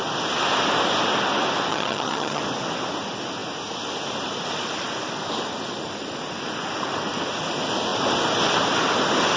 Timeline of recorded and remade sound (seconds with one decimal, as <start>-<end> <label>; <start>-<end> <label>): 0.0-1.7 recorded; 1.7-2.4 remade; 2.4-9.4 recorded